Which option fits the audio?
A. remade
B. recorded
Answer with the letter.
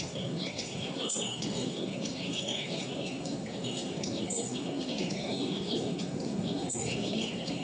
A